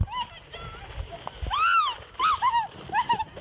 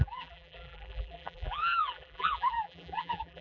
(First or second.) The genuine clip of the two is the first